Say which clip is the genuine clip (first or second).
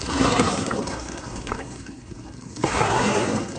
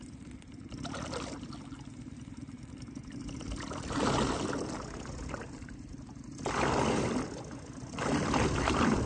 second